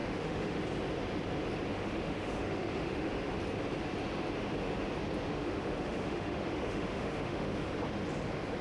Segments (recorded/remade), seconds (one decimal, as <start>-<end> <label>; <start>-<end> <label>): 0.0-0.6 remade; 0.6-1.7 recorded; 1.7-3.3 remade; 3.3-5.3 recorded; 5.3-7.6 remade; 7.6-8.6 recorded